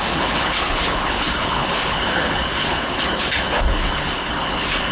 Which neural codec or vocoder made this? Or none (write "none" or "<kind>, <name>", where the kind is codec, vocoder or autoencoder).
codec, HILCodec